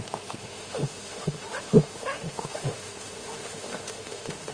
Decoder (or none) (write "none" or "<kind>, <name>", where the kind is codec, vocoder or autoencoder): autoencoder, DAC-VAE